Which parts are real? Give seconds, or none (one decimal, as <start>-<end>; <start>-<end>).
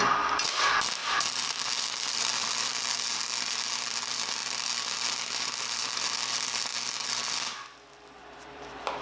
6.7-8.2